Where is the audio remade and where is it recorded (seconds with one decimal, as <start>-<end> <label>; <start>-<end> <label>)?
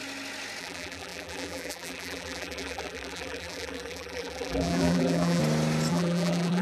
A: 0.0-0.6 recorded; 0.6-5.4 remade; 5.4-5.9 recorded; 5.9-6.6 remade